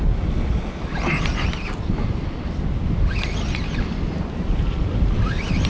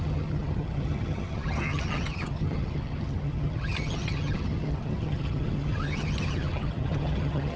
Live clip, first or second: first